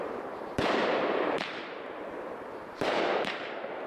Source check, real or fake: fake